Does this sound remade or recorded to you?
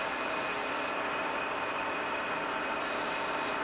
recorded